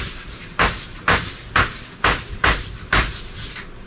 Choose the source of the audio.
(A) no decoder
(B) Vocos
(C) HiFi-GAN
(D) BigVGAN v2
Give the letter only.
D